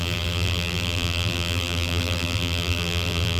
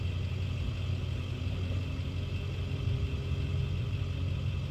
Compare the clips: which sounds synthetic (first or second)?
first